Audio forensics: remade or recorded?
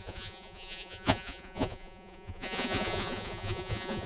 remade